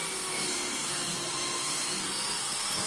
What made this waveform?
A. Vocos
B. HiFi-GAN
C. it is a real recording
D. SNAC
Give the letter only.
D